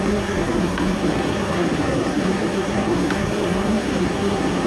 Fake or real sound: fake